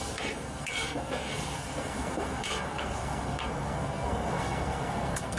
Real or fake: fake